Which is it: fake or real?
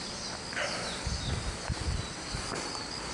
real